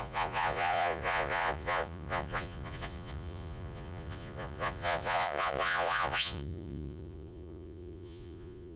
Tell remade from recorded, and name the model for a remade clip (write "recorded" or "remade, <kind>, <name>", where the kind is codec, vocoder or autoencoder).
remade, vocoder, Vocos